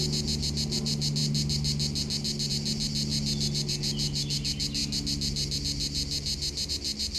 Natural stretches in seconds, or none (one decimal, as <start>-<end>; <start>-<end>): 0.0-7.2